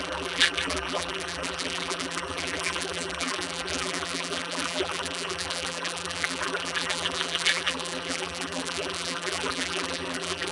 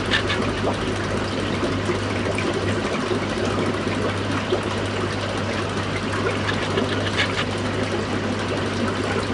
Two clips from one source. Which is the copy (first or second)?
first